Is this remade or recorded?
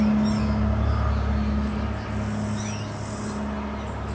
recorded